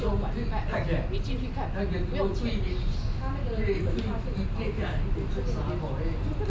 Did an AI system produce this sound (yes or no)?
no